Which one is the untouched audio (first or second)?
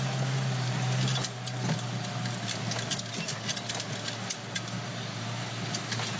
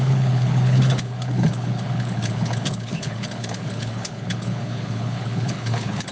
first